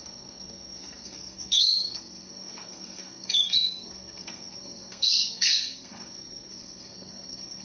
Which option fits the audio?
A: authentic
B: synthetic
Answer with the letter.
B